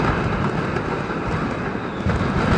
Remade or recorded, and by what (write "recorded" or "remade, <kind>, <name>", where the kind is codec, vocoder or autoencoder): recorded